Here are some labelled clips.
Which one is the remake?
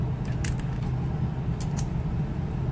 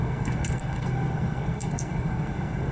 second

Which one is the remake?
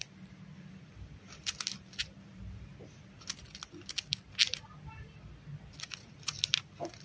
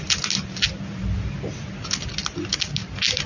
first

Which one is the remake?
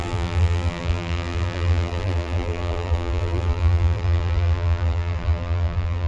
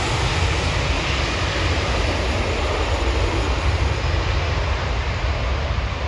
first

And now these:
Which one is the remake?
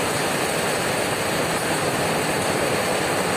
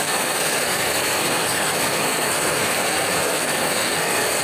second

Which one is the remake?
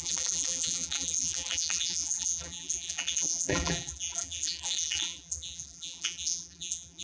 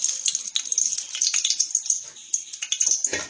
first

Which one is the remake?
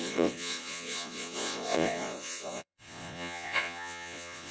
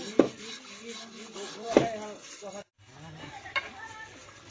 first